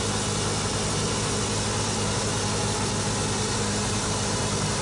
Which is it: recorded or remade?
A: recorded